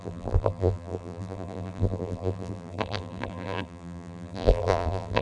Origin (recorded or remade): remade